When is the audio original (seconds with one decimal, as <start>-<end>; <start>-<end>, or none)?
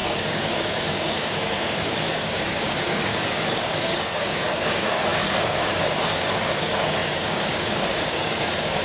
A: none